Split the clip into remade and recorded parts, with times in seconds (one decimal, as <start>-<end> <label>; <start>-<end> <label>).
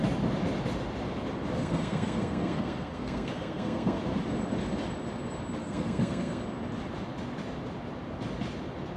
0.0-1.6 recorded; 1.6-4.0 remade; 4.0-5.6 recorded; 5.6-6.4 remade; 6.4-9.0 recorded